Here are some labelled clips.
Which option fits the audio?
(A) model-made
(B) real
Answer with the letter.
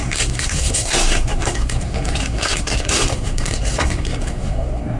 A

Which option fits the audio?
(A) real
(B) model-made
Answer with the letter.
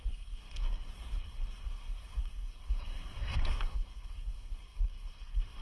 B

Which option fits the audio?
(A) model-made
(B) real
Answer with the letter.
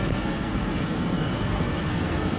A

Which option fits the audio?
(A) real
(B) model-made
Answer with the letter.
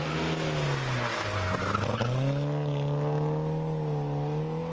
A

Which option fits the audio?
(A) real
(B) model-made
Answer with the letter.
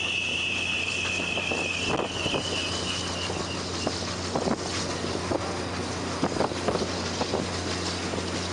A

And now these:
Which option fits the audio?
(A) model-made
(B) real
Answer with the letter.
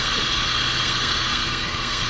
A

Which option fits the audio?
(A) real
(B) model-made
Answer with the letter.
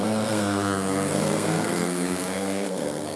B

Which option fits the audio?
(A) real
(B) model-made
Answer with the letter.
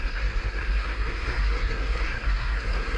B